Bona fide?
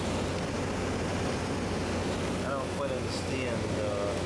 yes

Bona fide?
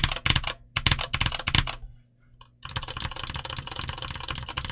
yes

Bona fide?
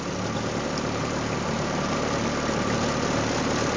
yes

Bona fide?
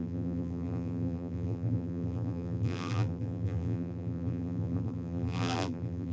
no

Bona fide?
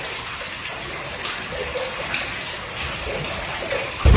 yes